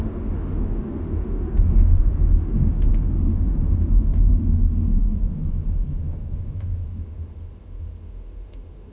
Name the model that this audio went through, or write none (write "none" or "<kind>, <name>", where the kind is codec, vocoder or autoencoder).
autoencoder, DAC-VAE